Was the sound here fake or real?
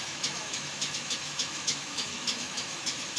fake